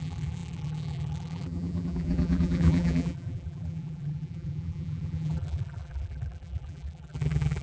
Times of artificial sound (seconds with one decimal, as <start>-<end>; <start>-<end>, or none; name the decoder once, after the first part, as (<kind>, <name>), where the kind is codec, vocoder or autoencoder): 0.0-7.6 (vocoder, BigVGAN v2)